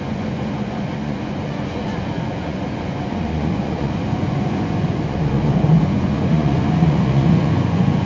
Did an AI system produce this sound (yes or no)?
yes